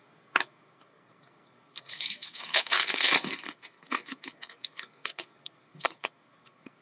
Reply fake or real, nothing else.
fake